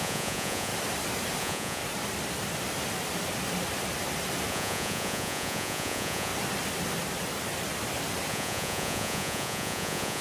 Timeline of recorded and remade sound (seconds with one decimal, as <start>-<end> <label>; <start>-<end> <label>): 0.0-0.7 remade; 0.7-1.4 recorded; 1.4-1.8 remade; 1.8-4.5 recorded; 4.5-6.3 remade; 6.3-8.3 recorded; 8.3-10.2 remade

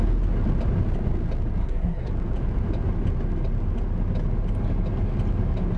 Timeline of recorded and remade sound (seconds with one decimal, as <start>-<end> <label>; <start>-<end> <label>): 0.0-1.6 recorded; 1.6-2.1 remade; 2.1-5.8 recorded

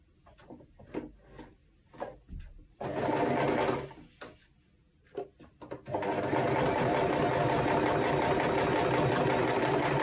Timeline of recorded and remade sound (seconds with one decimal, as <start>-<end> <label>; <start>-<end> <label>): 0.0-1.6 remade; 1.6-6.5 recorded; 6.5-10.0 remade

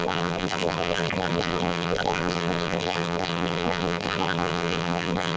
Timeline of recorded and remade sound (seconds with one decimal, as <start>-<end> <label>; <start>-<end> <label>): 0.0-5.4 remade

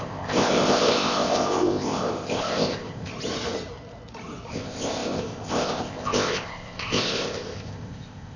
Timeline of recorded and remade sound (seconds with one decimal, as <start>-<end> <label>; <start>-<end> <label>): 0.0-3.1 remade; 3.1-4.5 recorded; 4.5-8.4 remade